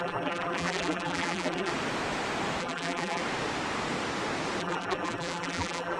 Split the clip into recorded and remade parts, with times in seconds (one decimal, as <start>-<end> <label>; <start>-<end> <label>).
0.0-1.7 remade; 1.7-2.6 recorded; 2.6-3.2 remade; 3.2-4.6 recorded; 4.6-6.0 remade